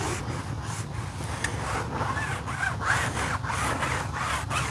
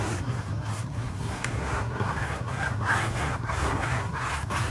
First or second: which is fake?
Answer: second